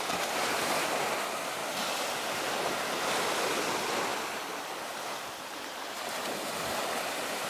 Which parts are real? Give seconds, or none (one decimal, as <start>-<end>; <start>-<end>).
0.0-7.5